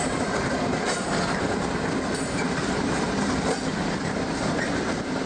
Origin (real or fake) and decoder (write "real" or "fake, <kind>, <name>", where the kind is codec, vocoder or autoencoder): real